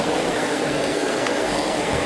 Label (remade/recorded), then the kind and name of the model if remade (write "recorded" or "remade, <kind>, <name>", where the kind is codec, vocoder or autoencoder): remade, codec, SNAC